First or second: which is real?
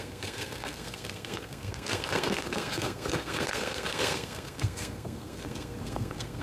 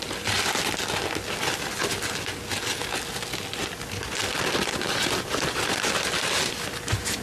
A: second